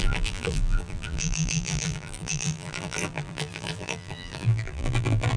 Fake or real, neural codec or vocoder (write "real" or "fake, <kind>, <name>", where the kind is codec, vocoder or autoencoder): fake, vocoder, BigVGAN v2